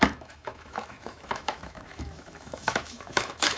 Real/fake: fake